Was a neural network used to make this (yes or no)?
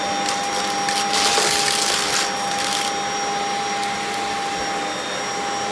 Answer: no